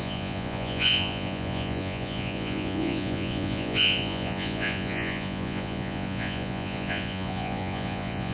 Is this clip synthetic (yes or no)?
yes